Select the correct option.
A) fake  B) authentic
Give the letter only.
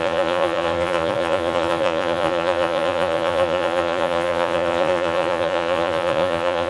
A